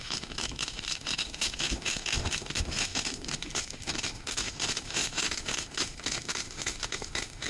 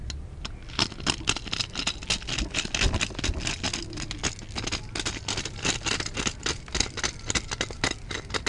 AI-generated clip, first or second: first